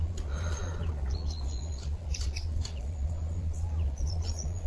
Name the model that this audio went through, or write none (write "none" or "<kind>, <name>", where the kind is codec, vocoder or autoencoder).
vocoder, Vocos